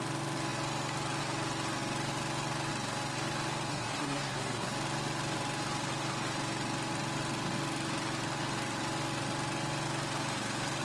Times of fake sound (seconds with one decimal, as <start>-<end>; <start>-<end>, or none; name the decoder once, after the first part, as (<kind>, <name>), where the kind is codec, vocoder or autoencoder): 3.7-4.7 (codec, SNAC)